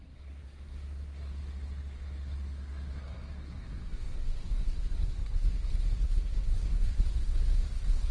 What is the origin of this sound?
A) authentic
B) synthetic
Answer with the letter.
B